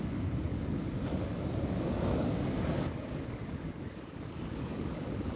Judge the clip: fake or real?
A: fake